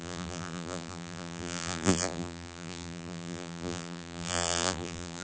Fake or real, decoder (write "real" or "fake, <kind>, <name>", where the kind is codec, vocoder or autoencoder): fake, vocoder, BigVGAN v2